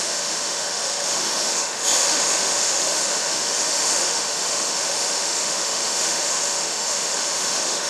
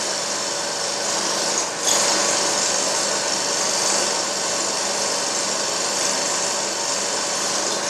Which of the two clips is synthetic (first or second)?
first